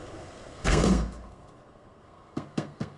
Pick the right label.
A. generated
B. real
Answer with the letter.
A